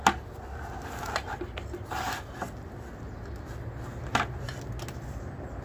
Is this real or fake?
real